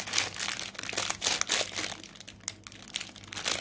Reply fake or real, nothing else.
real